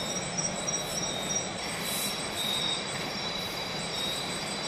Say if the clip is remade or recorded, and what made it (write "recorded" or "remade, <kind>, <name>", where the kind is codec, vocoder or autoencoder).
remade, vocoder, BigVGAN v2